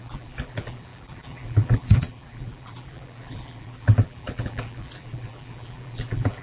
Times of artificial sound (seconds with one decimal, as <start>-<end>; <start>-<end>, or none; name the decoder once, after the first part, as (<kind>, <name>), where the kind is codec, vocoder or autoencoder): 0.0-6.4 (vocoder, BigVGAN v2)